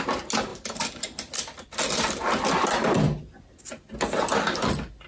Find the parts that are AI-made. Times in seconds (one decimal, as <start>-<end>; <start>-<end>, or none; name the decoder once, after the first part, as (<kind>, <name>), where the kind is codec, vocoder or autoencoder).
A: none